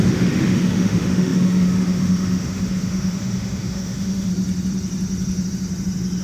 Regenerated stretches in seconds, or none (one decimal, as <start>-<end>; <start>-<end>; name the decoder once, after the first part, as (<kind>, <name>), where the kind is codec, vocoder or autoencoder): 0.0-4.3 (autoencoder, DAC-VAE)